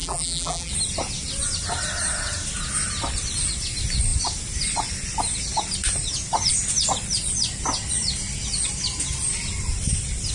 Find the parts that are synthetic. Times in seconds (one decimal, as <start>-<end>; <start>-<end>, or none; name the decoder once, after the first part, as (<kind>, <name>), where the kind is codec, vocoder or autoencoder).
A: 0.0-0.7 (vocoder, BigVGAN v2)